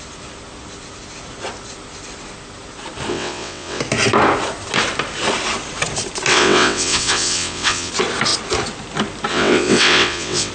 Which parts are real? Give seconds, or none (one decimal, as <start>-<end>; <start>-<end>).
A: 0.0-3.1; 3.8-6.3; 7.9-9.3